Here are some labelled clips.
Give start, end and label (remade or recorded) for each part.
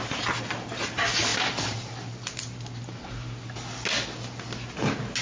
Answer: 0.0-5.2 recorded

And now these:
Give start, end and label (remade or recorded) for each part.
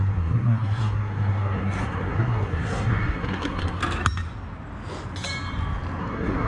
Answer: 0.0-3.8 remade; 3.8-6.0 recorded; 6.0-6.5 remade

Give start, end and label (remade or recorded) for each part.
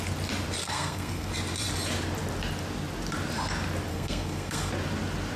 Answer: 0.0-0.6 recorded; 0.6-1.3 remade; 1.3-3.9 recorded; 3.9-4.7 remade; 4.7-5.4 recorded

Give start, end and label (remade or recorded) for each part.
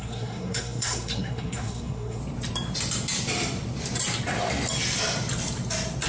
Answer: 0.0-2.2 remade; 2.2-6.1 recorded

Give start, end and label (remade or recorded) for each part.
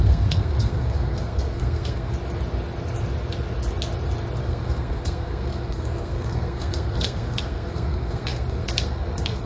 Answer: 0.0-2.1 remade; 2.1-4.4 recorded; 4.4-9.5 remade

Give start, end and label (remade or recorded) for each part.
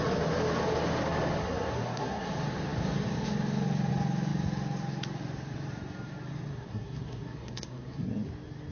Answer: 0.0-1.4 recorded; 1.4-2.3 remade; 2.3-6.5 recorded; 6.5-8.1 remade; 8.1-8.7 recorded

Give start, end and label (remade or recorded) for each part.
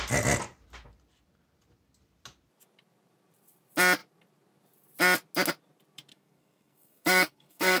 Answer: 0.0-6.1 recorded; 6.1-7.8 remade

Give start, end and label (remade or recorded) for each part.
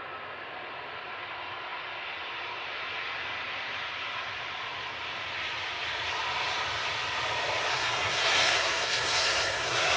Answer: 0.0-7.7 recorded; 7.7-10.0 remade